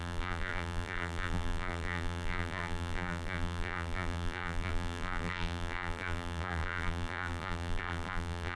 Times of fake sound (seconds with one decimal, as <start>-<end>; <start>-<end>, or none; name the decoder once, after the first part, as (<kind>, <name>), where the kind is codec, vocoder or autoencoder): 0.0-8.6 (vocoder, BigVGAN v2)